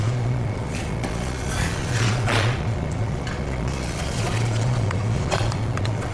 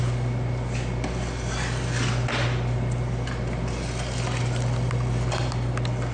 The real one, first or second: second